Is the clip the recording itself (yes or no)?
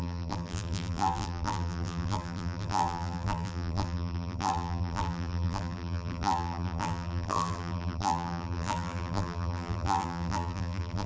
no